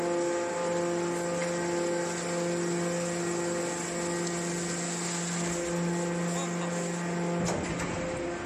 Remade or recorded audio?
recorded